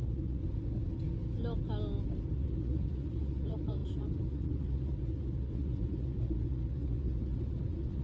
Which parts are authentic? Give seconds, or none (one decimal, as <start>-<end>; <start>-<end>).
0.4-2.3